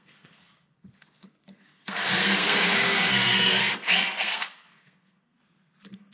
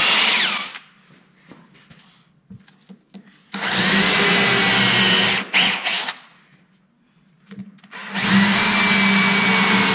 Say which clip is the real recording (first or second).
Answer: second